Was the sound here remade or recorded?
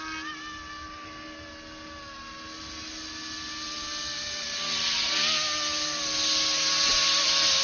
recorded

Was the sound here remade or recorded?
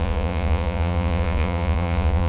remade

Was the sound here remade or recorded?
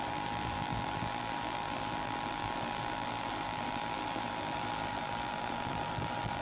remade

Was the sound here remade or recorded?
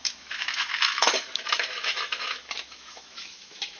remade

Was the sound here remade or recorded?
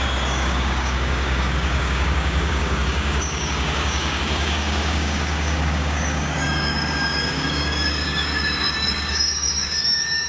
remade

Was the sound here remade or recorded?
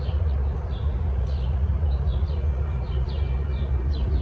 remade